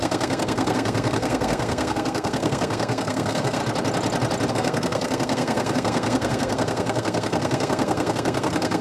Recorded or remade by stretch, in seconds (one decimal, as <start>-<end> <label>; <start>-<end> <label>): 0.0-3.6 remade; 3.6-4.5 recorded; 4.5-8.8 remade